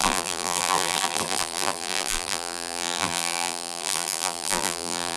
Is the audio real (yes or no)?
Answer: no